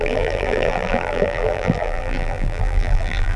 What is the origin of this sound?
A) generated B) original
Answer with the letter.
A